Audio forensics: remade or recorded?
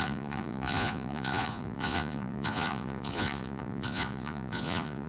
remade